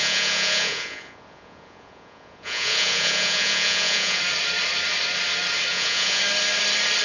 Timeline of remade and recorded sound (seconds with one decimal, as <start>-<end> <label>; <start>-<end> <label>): 0.0-4.2 remade; 4.2-5.7 recorded; 5.7-6.2 remade; 6.2-7.0 recorded